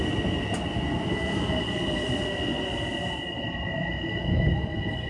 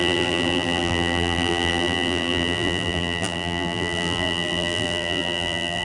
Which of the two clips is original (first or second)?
first